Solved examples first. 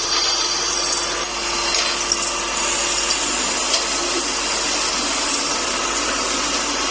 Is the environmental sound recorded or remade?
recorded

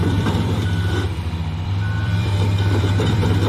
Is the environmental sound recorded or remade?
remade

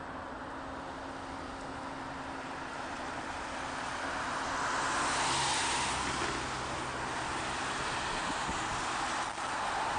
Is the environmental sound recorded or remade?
recorded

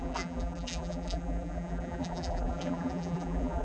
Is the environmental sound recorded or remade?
remade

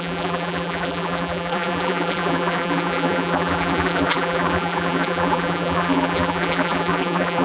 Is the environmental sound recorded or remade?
remade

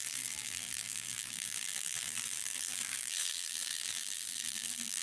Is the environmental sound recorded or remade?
remade